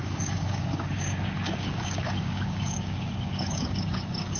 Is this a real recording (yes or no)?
no